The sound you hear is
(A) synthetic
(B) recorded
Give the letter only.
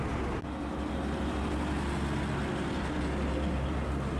B